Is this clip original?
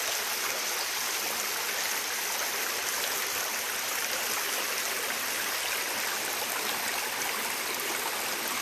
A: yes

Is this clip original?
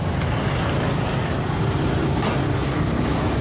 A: yes